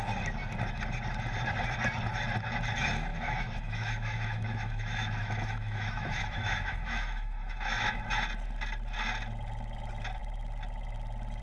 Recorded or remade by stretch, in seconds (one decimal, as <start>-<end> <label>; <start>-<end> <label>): 0.0-3.1 recorded; 3.1-8.0 remade; 8.0-11.4 recorded